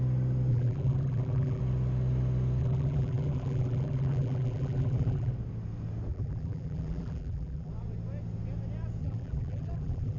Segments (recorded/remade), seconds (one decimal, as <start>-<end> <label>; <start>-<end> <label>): 0.0-0.5 recorded; 0.5-1.6 remade; 1.6-2.6 recorded; 2.6-5.3 remade; 5.3-6.1 recorded; 6.1-7.7 remade; 7.7-9.0 recorded; 9.0-10.2 remade